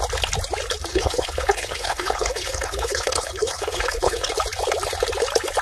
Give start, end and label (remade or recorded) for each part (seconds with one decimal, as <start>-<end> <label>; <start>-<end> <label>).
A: 0.0-0.9 recorded; 0.9-4.3 remade; 4.3-5.6 recorded